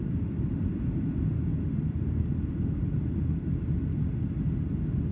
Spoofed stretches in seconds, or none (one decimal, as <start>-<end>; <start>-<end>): none